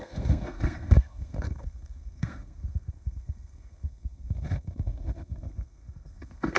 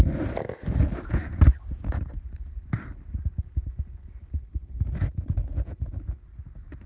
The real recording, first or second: second